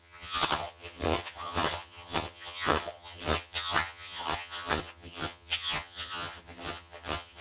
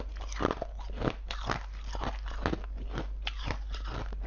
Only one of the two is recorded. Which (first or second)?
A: second